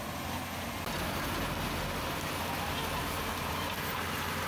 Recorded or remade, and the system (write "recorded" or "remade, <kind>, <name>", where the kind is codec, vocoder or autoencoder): recorded